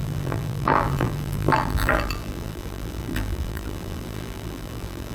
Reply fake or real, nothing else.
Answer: fake